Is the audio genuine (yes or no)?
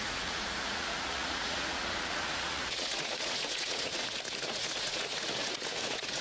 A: no